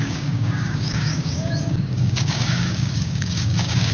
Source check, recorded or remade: remade